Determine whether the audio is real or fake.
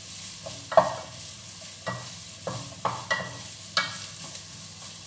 real